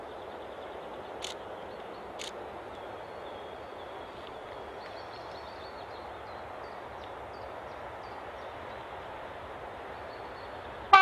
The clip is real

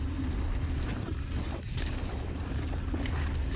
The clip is real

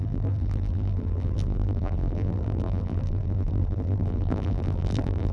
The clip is fake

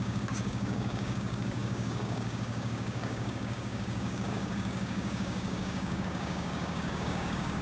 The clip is fake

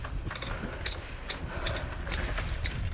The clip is real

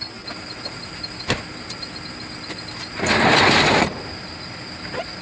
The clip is real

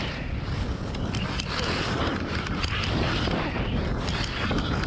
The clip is real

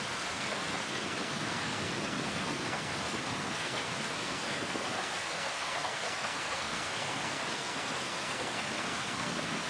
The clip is fake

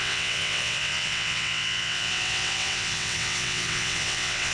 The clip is fake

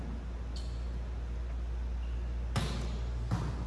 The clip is real